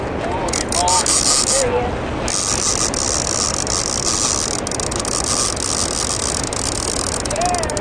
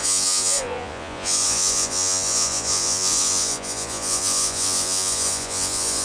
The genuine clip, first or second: first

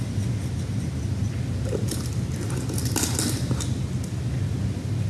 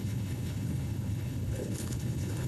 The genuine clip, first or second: first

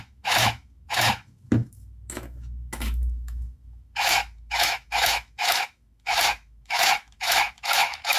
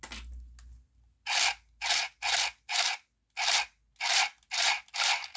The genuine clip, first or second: second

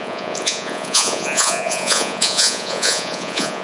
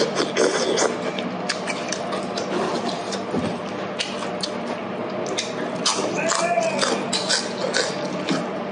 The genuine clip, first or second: second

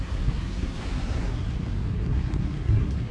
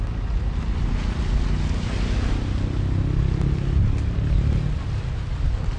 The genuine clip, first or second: second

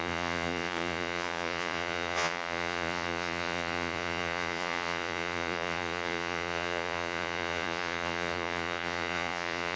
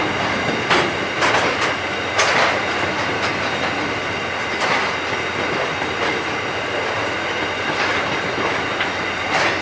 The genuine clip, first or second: second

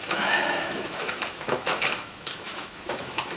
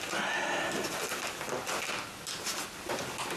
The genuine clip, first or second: second